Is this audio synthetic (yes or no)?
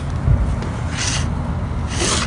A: no